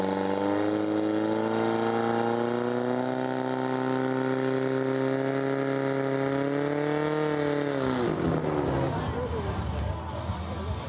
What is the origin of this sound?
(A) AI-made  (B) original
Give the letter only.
B